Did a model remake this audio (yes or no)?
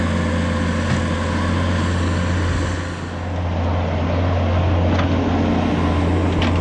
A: no